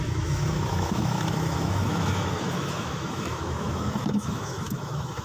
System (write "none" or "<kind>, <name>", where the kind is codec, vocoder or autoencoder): autoencoder, DAC-VAE